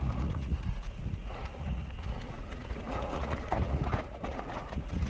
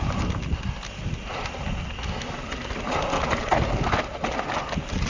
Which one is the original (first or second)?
second